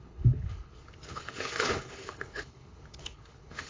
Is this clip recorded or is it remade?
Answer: remade